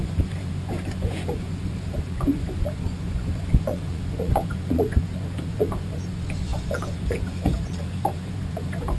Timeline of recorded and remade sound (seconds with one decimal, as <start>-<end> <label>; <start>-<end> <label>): 0.0-9.0 remade

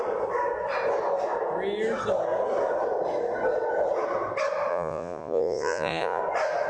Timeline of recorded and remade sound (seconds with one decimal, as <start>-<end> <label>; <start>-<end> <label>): 0.0-4.7 recorded; 4.7-6.2 remade; 6.2-6.7 recorded

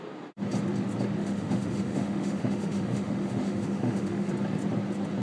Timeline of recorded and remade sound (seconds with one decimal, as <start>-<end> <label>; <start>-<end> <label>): 0.0-1.2 recorded; 1.2-4.3 remade; 4.3-5.2 recorded

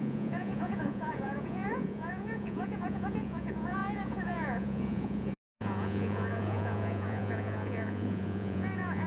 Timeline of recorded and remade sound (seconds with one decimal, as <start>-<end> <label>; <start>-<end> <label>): 0.0-9.1 remade

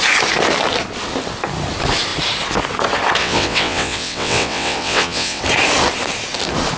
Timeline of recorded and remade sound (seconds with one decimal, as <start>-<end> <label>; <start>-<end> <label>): 0.0-3.2 recorded; 3.2-5.4 remade; 5.4-6.8 recorded